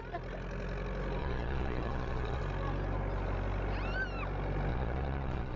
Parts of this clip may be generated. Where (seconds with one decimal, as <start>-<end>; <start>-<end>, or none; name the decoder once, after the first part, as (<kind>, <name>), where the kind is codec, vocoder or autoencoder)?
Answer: 1.2-2.4 (vocoder, Vocos); 4.7-5.6